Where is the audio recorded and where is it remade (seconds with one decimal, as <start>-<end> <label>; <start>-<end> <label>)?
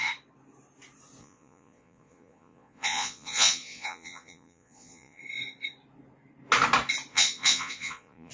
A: 0.0-1.2 recorded; 1.2-5.2 remade; 5.2-7.1 recorded; 7.1-8.3 remade